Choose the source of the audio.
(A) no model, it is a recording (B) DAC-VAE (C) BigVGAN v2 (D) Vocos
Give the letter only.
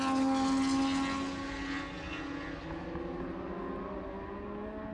A